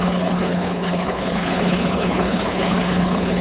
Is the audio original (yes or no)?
no